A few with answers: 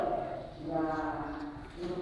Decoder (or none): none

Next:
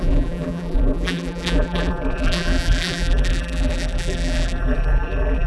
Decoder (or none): vocoder, BigVGAN v2